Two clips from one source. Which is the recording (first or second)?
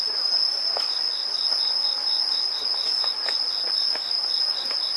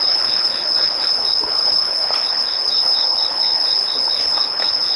first